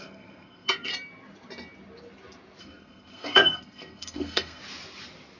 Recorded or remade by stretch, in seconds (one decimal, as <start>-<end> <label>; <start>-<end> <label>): 0.0-0.9 remade; 0.9-2.6 recorded; 2.6-4.6 remade; 4.6-5.4 recorded